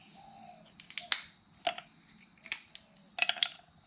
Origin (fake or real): real